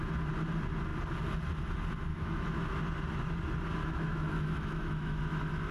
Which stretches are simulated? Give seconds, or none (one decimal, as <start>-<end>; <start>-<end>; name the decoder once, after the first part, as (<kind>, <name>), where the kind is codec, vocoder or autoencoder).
2.1-2.8 (autoencoder, DAC-VAE); 3.8-5.2